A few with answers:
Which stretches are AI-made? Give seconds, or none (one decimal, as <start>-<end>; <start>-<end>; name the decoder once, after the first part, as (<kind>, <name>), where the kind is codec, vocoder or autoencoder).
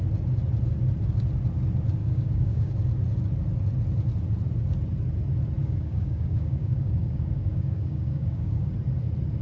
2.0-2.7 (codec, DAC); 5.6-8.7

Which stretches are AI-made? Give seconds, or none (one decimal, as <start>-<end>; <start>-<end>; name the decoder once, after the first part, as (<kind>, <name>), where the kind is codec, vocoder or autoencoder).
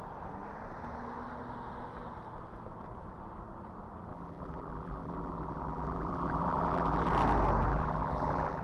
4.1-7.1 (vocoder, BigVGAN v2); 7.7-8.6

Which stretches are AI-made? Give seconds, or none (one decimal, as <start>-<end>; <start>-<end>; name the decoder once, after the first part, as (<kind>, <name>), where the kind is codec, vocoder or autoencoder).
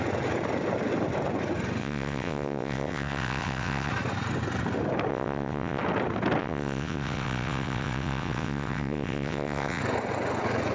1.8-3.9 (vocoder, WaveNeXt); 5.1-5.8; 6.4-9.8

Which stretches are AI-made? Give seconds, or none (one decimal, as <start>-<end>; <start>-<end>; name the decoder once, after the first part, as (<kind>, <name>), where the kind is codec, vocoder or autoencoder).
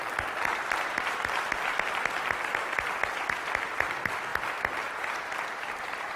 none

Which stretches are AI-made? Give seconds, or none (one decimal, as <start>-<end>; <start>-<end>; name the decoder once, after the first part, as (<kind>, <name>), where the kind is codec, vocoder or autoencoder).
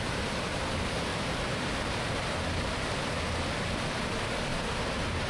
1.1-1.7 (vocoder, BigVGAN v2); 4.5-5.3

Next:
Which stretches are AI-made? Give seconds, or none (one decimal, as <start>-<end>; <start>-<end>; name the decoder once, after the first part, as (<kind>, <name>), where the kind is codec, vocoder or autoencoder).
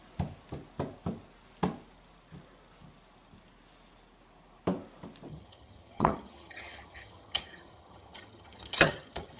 5.3-9.4 (vocoder, HiFi-GAN)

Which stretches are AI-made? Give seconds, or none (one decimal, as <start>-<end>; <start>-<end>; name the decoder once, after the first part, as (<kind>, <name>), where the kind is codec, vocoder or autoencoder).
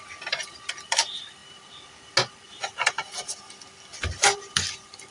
0.0-1.4 (vocoder, BigVGAN v2); 2.6-5.1